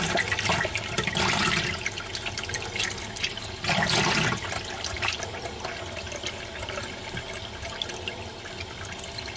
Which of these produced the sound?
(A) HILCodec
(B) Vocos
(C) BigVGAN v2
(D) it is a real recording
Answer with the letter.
D